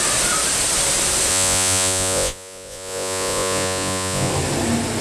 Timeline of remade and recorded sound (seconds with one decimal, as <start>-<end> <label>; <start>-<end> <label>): 0.0-1.3 recorded; 1.3-4.3 remade; 4.3-5.0 recorded